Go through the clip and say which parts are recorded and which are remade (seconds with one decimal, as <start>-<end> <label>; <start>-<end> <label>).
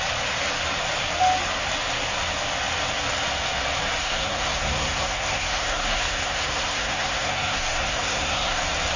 0.0-4.0 recorded; 4.0-8.6 remade; 8.6-9.0 recorded